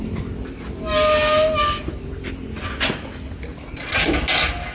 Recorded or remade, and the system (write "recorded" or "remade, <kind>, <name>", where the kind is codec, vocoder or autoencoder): recorded